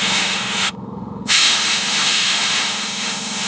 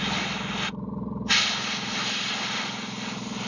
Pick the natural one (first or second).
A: second